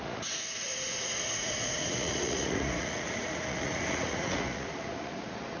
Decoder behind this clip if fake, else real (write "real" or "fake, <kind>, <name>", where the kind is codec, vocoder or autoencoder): fake, vocoder, Vocos